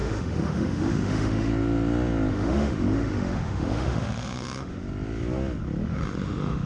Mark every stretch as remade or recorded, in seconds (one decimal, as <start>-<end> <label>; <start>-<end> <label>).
0.0-1.5 remade; 1.5-2.3 recorded; 2.3-4.8 remade; 4.8-5.9 recorded; 5.9-6.7 remade